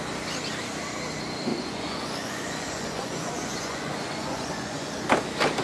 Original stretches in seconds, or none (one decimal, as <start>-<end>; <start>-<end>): 0.0-1.5; 4.9-5.6